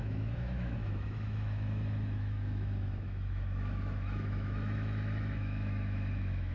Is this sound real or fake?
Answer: fake